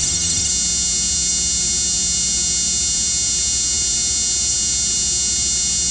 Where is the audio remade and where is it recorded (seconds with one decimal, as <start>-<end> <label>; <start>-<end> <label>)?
0.0-0.5 remade; 0.5-5.9 recorded